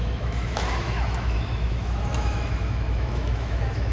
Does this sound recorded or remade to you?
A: remade